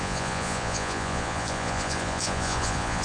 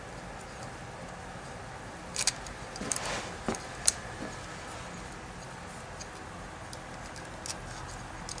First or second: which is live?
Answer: second